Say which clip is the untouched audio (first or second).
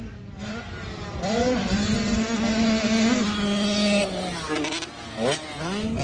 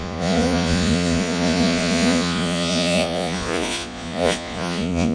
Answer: first